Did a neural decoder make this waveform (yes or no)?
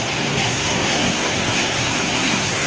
yes